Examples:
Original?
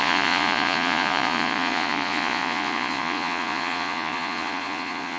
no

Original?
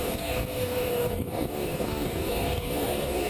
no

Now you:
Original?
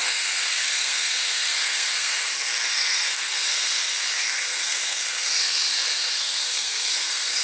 no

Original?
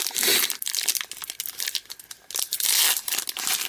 yes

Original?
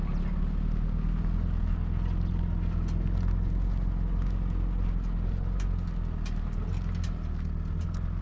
yes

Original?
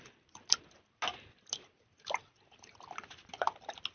yes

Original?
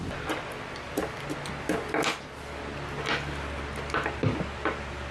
yes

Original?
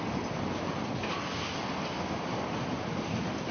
yes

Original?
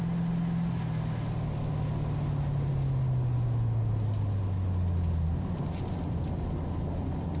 yes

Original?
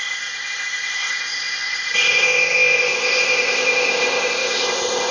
no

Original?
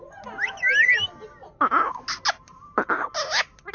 yes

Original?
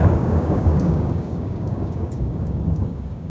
no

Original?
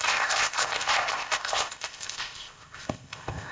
no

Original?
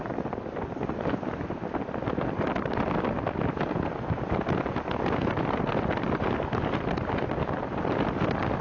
yes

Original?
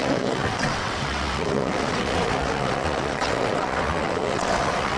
no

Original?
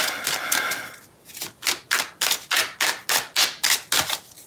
yes